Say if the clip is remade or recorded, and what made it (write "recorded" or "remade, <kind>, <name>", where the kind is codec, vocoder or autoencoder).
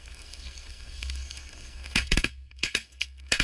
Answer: remade, codec, SNAC